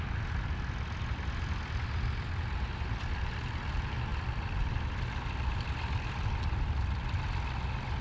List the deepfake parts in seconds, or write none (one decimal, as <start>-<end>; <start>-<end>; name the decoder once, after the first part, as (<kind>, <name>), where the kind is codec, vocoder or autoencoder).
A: none